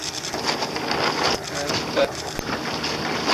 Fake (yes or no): no